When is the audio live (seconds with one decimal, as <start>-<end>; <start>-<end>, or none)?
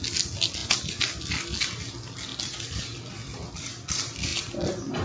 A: 0.0-5.0